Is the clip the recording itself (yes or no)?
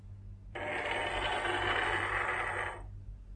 yes